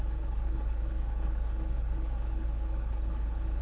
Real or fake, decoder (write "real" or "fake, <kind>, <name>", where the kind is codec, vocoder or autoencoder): fake, codec, HILCodec